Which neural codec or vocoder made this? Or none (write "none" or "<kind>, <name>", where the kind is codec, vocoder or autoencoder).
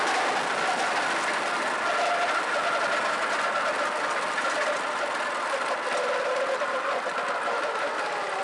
none